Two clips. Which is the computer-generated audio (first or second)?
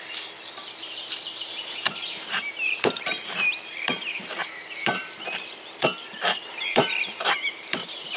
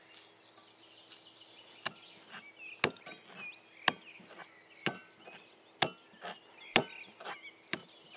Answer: first